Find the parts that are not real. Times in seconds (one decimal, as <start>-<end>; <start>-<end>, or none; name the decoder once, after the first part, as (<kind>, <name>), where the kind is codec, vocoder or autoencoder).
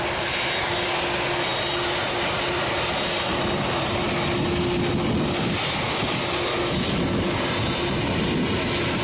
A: none